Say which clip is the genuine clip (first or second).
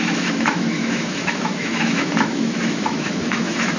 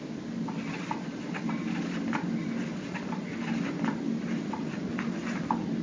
second